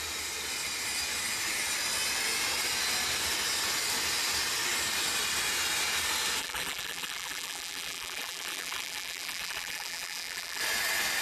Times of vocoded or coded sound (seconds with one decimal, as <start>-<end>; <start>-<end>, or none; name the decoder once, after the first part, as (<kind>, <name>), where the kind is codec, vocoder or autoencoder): 6.4-10.6 (vocoder, BigVGAN v2)